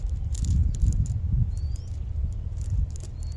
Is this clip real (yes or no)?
no